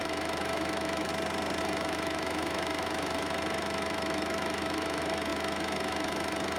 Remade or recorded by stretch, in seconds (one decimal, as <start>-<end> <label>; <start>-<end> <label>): 0.0-1.1 remade; 1.1-1.6 recorded; 1.6-6.6 remade